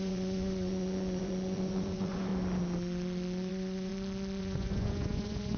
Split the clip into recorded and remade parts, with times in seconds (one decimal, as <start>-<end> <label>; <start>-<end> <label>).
0.0-2.3 remade; 2.3-3.5 recorded; 3.5-3.9 remade; 3.9-4.4 recorded; 4.4-5.6 remade